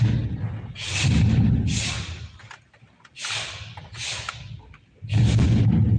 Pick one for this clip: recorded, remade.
recorded